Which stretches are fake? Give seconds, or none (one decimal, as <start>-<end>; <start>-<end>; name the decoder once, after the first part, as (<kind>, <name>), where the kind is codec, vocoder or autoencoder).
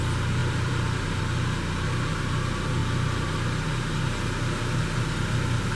0.4-1.2 (vocoder, BigVGAN v2)